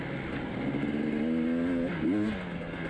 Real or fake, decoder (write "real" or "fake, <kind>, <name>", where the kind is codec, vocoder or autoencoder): real